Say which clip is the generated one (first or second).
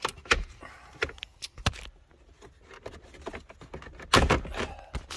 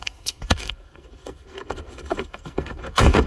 second